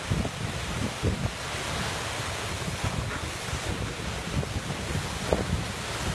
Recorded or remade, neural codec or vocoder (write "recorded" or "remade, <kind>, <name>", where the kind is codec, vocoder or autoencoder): recorded